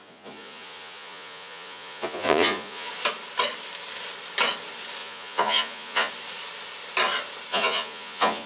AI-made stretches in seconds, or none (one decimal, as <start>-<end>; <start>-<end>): 0.0-2.9; 5.0-6.1; 7.5-8.5